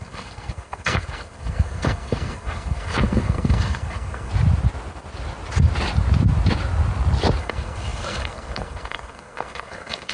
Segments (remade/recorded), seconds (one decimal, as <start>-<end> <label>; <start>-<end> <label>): 0.0-4.3 remade; 4.3-7.4 recorded; 7.4-10.1 remade

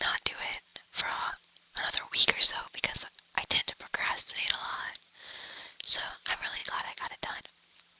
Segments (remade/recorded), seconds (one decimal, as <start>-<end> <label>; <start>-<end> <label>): 0.0-0.7 remade; 0.7-1.3 recorded; 1.3-3.6 remade; 3.6-5.5 recorded; 5.5-6.6 remade; 6.6-7.4 recorded; 7.4-8.0 remade

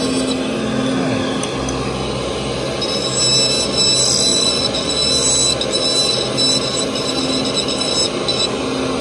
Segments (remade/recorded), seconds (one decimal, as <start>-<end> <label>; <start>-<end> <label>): 0.0-4.3 recorded; 4.3-4.9 remade; 4.9-9.0 recorded

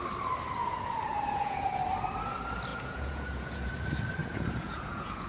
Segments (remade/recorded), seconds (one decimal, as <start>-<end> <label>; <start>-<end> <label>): 0.0-0.6 recorded; 0.6-1.8 remade; 1.8-2.7 recorded; 2.7-3.7 remade; 3.7-4.2 recorded; 4.2-5.3 remade

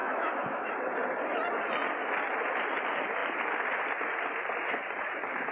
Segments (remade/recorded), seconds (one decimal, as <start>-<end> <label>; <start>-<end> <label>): 0.0-0.7 remade; 0.7-5.5 recorded

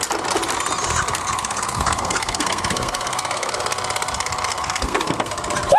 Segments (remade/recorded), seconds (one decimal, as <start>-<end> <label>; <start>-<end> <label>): 0.0-1.1 recorded; 1.1-3.5 remade; 3.5-4.5 recorded; 4.5-5.3 remade; 5.3-5.8 recorded

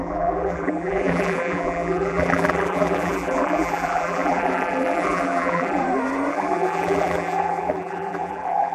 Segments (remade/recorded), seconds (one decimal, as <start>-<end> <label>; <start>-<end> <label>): 0.0-5.8 remade; 5.8-6.3 recorded; 6.3-8.7 remade